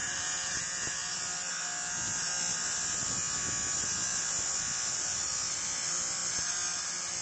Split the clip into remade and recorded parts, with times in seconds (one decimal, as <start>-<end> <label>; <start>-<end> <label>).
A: 0.0-0.6 remade; 0.6-7.2 recorded